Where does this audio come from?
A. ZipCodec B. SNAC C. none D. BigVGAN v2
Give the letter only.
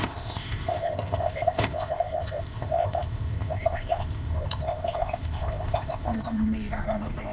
A